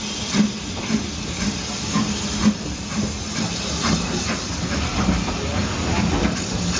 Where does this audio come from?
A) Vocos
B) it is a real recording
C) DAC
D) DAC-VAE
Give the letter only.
B